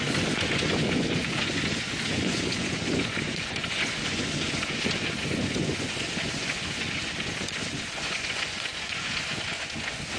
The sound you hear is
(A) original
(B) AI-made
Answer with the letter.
B